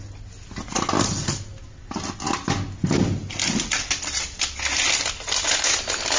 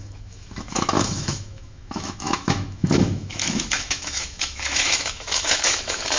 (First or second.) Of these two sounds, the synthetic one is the second